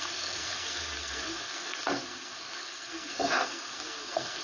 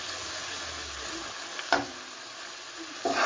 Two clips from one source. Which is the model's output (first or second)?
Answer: first